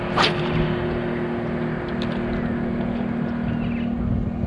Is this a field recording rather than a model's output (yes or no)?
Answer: yes